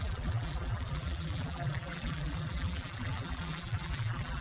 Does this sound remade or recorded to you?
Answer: remade